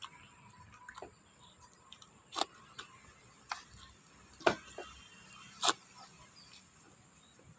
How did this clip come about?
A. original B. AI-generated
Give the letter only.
A